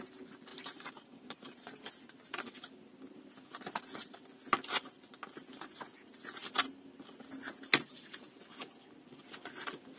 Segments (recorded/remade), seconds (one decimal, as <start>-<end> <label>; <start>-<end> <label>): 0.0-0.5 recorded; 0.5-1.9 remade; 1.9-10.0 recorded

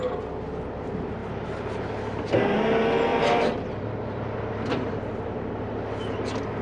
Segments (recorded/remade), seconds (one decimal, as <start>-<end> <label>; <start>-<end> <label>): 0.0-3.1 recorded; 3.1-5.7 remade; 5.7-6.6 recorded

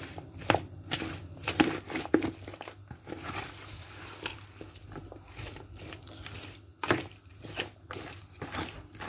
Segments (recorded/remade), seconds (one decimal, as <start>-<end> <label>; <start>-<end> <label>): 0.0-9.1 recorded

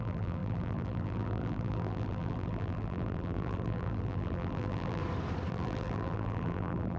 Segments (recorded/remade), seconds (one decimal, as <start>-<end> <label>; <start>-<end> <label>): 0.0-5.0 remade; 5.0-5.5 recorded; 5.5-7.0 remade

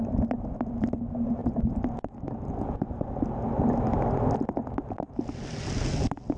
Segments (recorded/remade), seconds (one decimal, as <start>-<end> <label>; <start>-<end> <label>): 0.0-1.4 recorded; 1.4-5.2 remade; 5.2-6.4 recorded

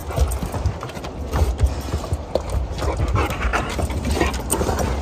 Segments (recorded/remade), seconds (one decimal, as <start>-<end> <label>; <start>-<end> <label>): 0.0-3.5 recorded; 3.5-4.1 remade; 4.1-5.0 recorded